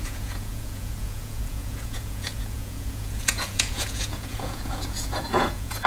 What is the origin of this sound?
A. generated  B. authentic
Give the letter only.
A